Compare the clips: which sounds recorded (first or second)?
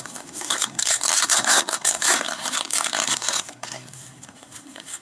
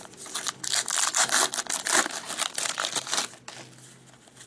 second